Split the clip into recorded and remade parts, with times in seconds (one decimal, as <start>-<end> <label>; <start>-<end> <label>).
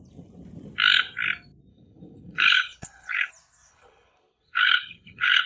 0.0-1.7 recorded; 1.7-3.3 remade; 3.3-3.7 recorded; 3.7-5.5 remade